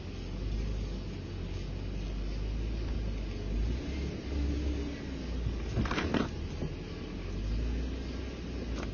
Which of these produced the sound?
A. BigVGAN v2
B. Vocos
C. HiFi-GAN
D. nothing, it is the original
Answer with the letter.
D